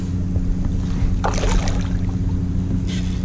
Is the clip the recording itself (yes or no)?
yes